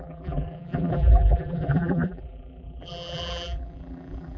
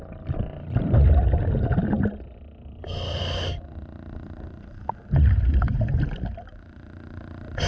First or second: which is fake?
first